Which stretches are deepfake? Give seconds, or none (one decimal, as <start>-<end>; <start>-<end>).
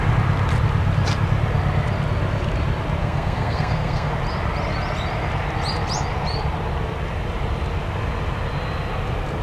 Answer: 3.0-4.1